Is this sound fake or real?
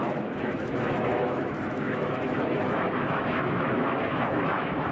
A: fake